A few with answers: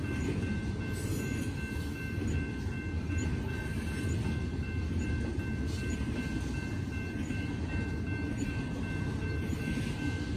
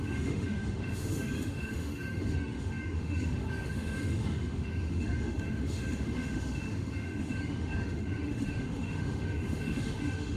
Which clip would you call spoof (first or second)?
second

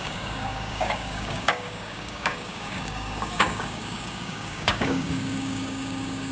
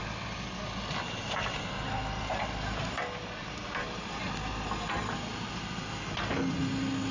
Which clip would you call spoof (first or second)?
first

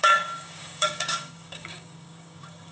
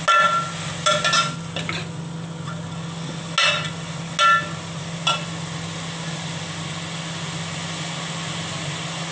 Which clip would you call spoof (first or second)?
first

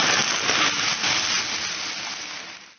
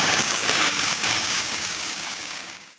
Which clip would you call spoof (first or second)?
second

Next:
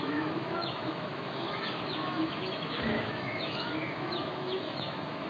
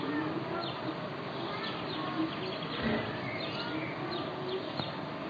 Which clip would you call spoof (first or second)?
first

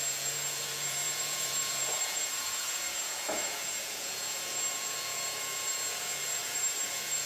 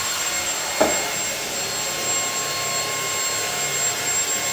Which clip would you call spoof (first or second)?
first